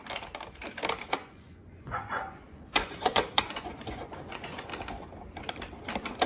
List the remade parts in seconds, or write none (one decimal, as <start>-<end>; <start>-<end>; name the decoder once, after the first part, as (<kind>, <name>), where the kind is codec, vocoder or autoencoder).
1.2-4.7 (vocoder, Vocos)

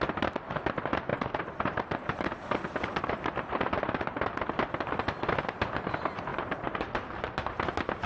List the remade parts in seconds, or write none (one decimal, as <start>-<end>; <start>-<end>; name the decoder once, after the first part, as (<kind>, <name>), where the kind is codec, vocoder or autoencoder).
1.1-4.2 (vocoder, BigVGAN v2); 6.3-6.9

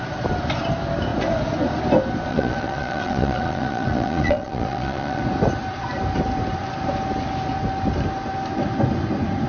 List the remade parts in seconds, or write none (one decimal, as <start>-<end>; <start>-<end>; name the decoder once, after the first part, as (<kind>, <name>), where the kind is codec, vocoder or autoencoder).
2.3-5.2 (vocoder, Vocos)

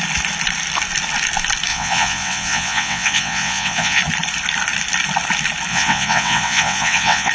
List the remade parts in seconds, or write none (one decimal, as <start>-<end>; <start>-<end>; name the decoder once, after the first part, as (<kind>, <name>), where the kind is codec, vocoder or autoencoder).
1.7-4.0 (vocoder, WaveNeXt); 5.7-7.3

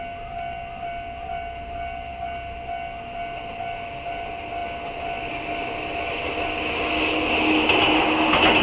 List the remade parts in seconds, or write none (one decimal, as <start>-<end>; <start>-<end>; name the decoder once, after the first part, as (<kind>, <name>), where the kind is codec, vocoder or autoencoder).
none